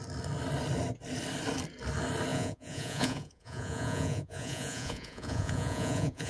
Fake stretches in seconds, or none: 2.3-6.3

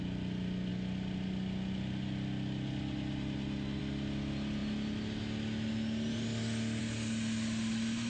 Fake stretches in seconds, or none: none

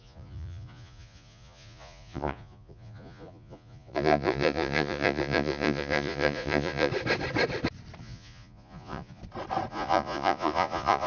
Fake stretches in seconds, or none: 0.0-6.9; 8.0-9.2; 9.7-11.1

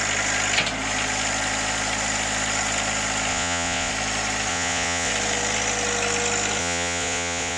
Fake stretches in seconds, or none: 3.3-3.9; 4.5-5.1; 6.6-7.6

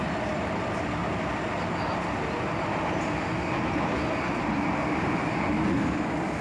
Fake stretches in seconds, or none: none